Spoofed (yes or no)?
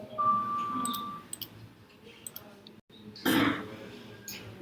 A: no